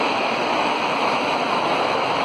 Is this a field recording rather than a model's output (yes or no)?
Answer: no